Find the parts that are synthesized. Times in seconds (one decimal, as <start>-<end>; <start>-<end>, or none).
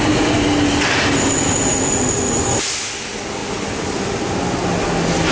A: none